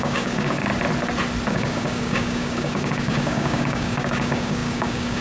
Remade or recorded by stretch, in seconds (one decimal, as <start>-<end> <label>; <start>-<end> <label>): 0.0-0.7 remade; 0.7-1.5 recorded; 1.5-5.2 remade